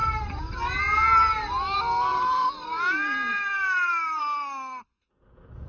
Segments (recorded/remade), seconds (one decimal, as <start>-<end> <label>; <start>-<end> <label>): 0.0-0.8 remade; 0.8-2.1 recorded; 2.1-4.2 remade; 4.2-5.7 recorded